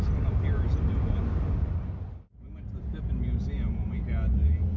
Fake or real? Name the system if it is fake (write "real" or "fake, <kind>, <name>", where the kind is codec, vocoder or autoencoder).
real